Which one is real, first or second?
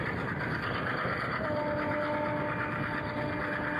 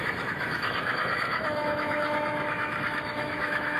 first